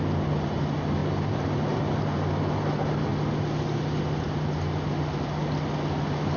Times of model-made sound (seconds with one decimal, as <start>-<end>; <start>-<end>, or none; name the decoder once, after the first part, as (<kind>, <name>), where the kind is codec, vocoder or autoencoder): none